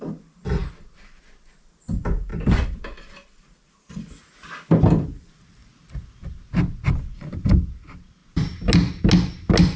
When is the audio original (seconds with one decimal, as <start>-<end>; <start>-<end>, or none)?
0.0-9.8